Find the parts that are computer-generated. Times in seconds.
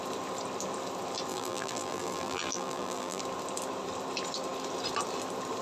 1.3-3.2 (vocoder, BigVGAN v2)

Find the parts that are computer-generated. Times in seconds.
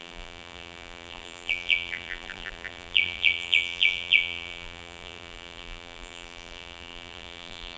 0.0-7.8 (vocoder, BigVGAN v2)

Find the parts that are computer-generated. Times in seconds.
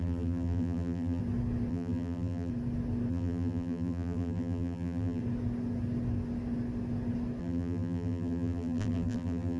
0.0-1.2 (vocoder, BigVGAN v2); 1.7-2.5; 3.1-5.2; 7.4-9.6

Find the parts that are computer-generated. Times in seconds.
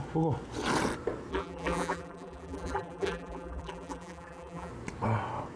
1.3-4.7 (vocoder, BigVGAN v2)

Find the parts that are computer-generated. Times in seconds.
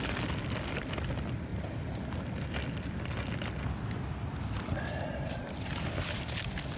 0.0-1.5 (vocoder, BigVGAN v2); 5.6-6.8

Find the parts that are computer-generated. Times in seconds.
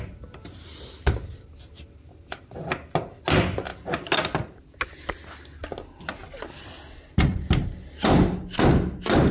none